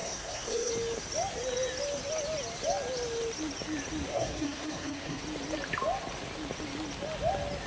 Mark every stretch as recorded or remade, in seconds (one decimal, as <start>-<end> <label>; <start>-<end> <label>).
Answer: 0.0-0.7 remade; 0.7-4.1 recorded; 4.1-5.2 remade; 5.2-7.7 recorded